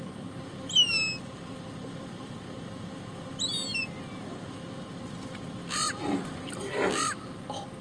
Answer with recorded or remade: recorded